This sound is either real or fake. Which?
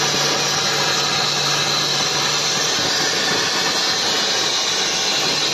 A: real